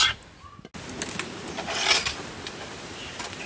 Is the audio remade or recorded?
recorded